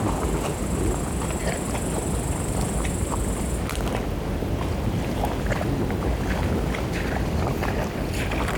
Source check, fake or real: real